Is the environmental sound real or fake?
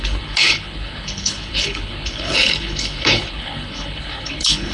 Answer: fake